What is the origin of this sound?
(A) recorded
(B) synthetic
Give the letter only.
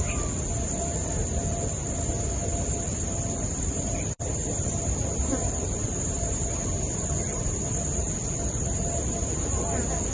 B